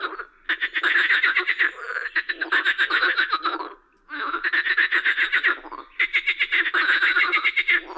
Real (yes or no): yes